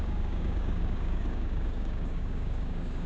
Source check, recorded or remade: remade